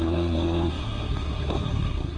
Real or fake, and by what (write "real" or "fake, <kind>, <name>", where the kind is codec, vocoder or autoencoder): fake, codec, SNAC